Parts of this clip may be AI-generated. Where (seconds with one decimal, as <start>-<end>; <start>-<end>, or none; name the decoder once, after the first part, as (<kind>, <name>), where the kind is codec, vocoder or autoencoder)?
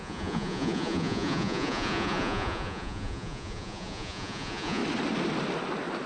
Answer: 0.0-4.8 (vocoder, Vocos)